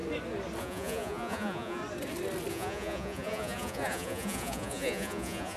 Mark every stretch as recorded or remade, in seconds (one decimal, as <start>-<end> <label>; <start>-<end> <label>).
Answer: 0.0-0.6 recorded; 0.6-1.8 remade; 1.8-2.5 recorded; 2.5-5.6 remade